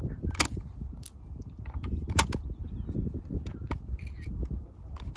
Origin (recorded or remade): recorded